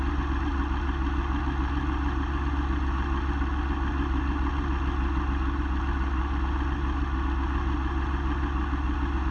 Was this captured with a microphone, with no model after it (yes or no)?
yes